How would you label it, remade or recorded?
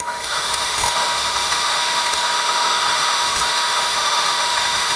remade